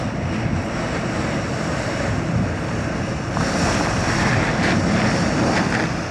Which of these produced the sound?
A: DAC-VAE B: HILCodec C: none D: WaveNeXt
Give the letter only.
C